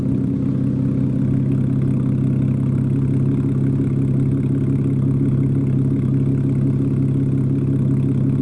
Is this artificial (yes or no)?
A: no